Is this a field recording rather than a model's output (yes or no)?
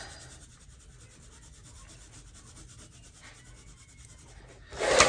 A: yes